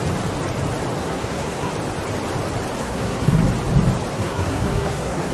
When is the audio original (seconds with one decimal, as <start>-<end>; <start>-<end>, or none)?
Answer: 0.0-1.0; 1.7-2.8; 3.4-4.1